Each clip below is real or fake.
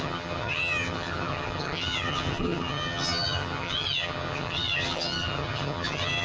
fake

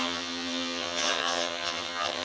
fake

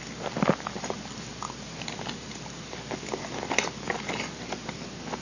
real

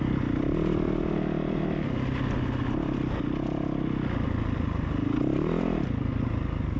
real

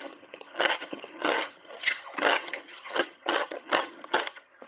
fake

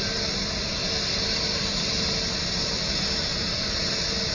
real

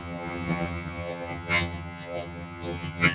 fake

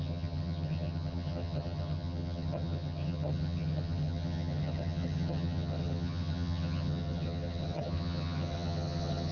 fake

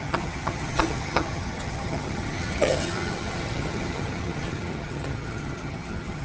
fake